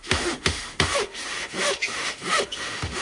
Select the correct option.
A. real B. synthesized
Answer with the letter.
B